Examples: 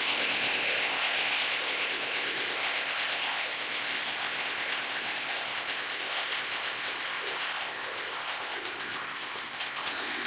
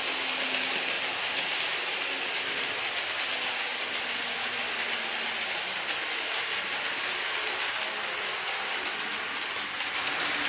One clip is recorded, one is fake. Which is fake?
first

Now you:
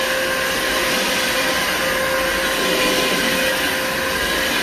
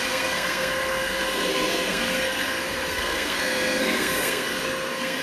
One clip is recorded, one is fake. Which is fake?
second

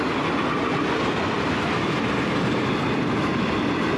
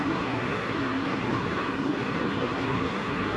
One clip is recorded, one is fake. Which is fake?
second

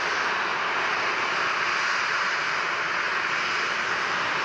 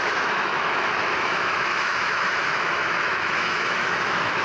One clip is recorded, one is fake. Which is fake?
second